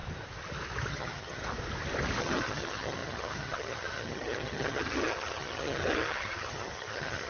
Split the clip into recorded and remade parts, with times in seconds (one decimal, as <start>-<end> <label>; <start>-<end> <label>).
0.0-0.9 recorded; 0.9-1.4 remade; 1.4-2.2 recorded; 2.2-7.3 remade